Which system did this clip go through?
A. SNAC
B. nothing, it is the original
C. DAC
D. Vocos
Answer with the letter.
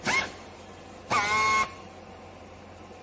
B